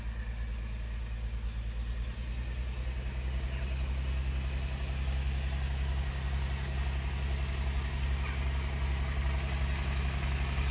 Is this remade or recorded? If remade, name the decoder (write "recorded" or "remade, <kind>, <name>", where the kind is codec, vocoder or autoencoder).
recorded